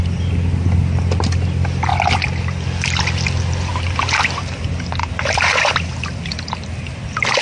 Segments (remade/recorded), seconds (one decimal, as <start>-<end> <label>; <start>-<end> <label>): 0.0-7.4 recorded